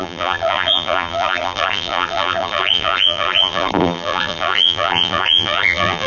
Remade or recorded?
remade